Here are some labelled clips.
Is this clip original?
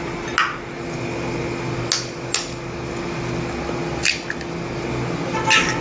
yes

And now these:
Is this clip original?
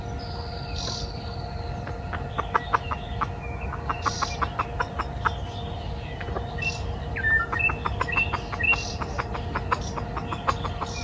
yes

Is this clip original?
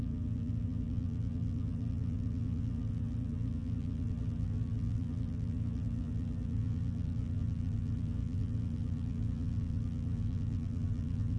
no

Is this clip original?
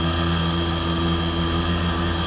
yes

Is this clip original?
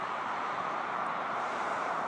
no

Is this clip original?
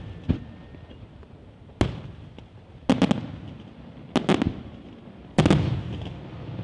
yes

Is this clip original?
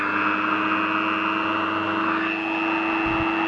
yes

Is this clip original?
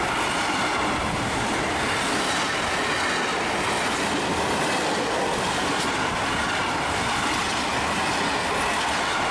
yes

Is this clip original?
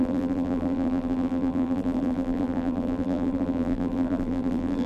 no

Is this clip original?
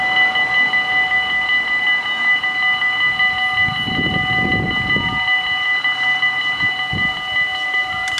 yes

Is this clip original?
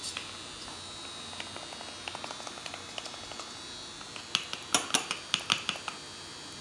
yes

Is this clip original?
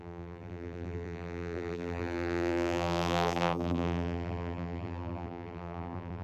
no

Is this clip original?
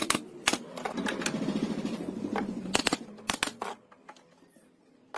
no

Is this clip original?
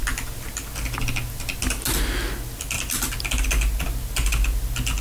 yes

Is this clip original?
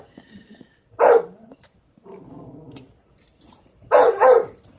no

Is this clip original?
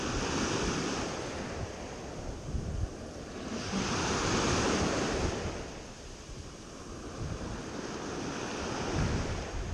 no